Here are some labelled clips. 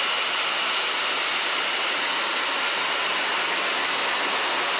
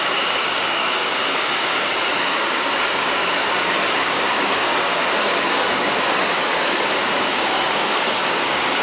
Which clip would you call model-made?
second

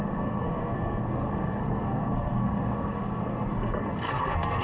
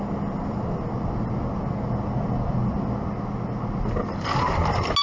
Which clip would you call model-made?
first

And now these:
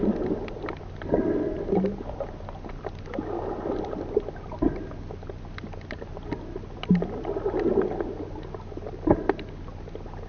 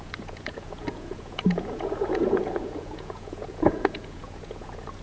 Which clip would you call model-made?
second